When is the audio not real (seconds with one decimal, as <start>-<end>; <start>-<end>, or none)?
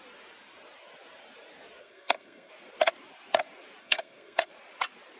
1.8-2.5; 3.8-4.5